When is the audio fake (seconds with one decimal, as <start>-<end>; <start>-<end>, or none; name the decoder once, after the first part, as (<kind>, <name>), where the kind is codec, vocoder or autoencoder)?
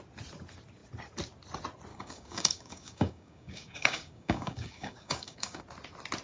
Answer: 1.9-5.6 (codec, DAC)